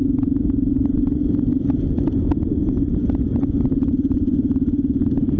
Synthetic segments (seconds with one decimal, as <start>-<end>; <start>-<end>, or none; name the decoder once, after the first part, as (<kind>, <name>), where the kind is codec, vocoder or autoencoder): none